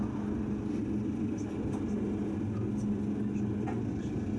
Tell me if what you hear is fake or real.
real